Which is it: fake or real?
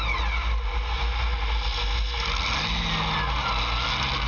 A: real